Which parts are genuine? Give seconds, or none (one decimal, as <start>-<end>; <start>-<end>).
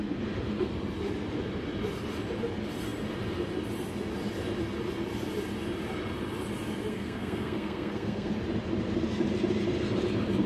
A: 0.0-6.9; 8.3-10.5